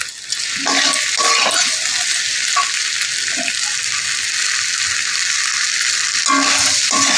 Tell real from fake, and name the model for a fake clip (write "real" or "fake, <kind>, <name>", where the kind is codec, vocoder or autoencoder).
real